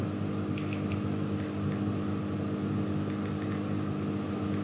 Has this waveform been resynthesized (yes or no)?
no